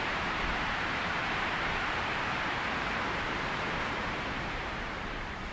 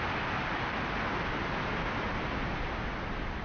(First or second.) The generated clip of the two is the first